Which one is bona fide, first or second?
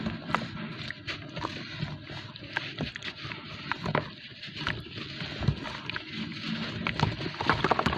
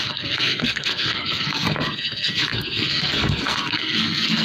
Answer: first